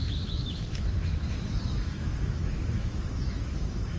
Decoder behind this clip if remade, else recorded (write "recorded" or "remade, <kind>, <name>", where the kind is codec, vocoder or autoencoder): remade, autoencoder, DAC-VAE